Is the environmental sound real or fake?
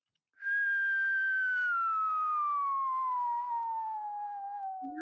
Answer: real